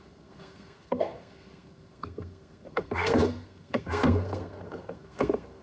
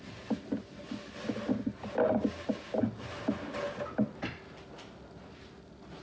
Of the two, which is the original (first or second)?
second